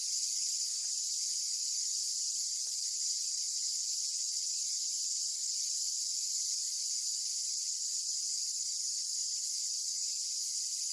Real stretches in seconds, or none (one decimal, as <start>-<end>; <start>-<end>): 0.0-9.9; 10.5-10.9